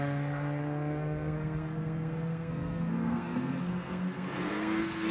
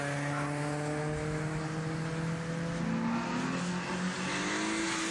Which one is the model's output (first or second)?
first